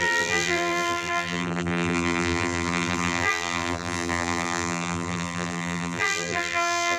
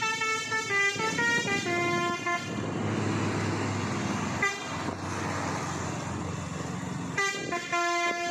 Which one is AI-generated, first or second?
first